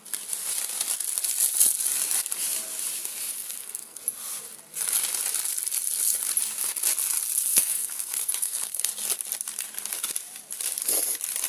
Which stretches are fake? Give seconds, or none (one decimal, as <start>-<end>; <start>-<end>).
3.3-4.0; 7.5-8.9